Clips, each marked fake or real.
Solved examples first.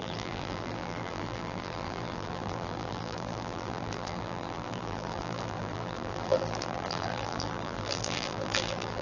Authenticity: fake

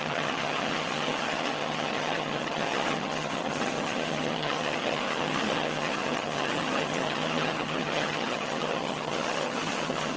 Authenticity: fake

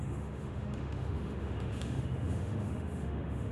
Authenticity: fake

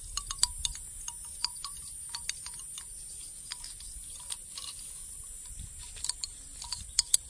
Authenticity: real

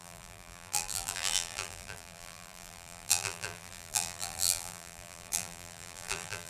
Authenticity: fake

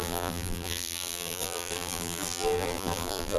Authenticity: fake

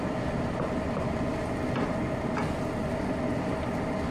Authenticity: real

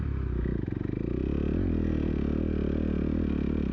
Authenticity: real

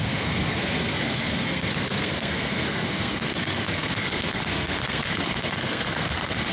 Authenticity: fake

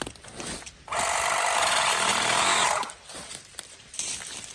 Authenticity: real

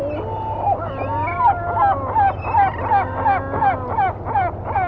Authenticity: real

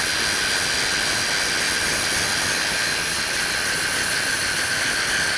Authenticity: real